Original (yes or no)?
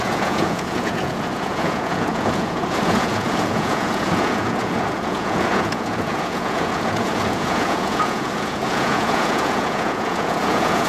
no